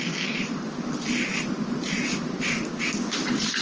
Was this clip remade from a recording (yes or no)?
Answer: no